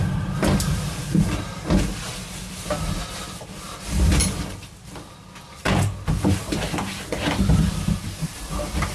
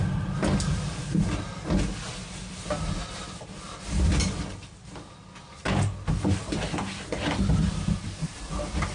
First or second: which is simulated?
first